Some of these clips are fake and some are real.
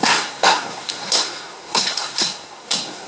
fake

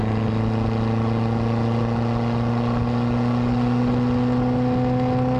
real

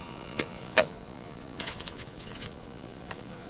fake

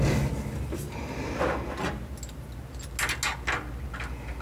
real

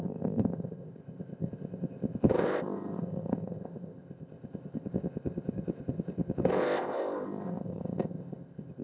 fake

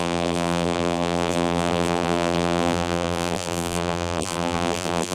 fake